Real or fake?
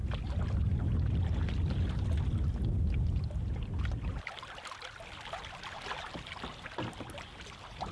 real